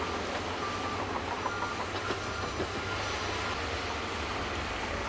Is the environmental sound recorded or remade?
recorded